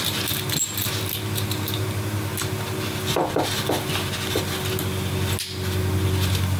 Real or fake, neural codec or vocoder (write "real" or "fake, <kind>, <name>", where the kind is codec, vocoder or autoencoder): real